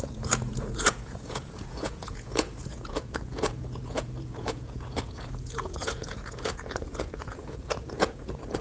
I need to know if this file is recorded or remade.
remade